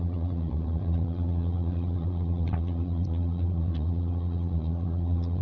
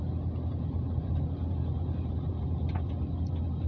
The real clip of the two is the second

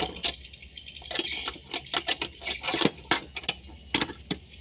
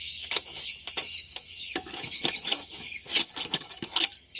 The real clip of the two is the first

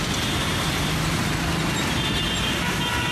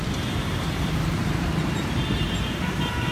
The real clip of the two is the first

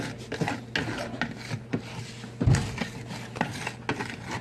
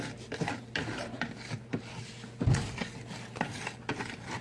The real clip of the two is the first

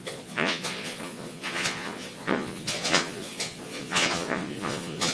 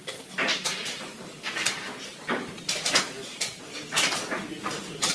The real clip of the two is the second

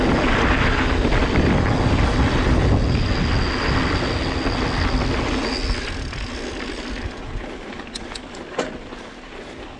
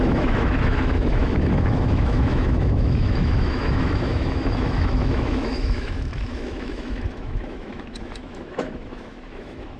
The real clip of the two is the first